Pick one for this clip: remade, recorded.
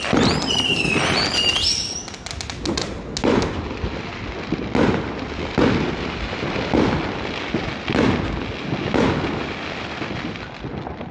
recorded